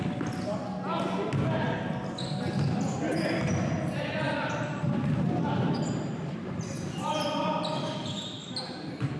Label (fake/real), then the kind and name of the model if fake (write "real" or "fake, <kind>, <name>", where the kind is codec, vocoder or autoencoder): real